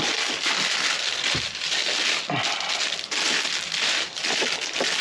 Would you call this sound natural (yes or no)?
no